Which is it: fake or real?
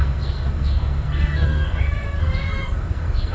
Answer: fake